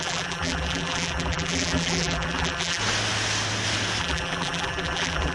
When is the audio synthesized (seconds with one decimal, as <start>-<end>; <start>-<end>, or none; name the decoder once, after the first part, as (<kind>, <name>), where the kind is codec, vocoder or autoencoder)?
0.0-2.8 (vocoder, BigVGAN v2); 4.0-5.3